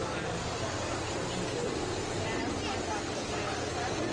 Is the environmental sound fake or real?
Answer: real